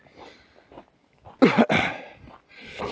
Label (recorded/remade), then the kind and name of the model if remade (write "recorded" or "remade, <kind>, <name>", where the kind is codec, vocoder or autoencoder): recorded